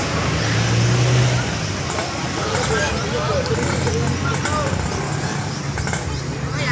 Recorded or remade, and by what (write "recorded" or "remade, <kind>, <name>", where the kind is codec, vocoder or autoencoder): recorded